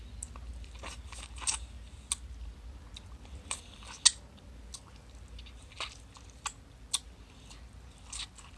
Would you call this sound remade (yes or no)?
no